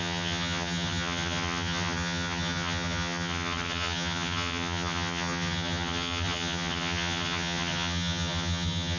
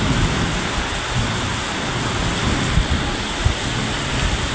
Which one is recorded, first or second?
second